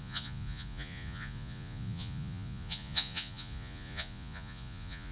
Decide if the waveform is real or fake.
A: fake